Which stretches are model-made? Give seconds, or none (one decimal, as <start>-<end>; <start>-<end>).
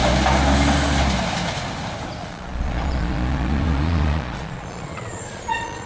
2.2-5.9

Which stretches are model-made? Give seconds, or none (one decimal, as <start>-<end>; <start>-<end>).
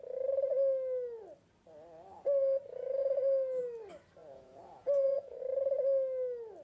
4.2-5.4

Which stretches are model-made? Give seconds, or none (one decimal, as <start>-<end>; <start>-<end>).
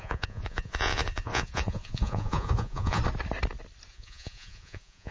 0.0-3.0; 3.9-5.1